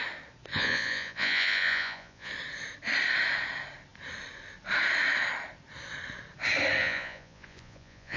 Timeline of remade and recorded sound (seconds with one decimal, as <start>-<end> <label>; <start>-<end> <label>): 0.0-0.5 recorded; 0.5-2.3 remade; 2.3-6.8 recorded; 6.8-8.2 remade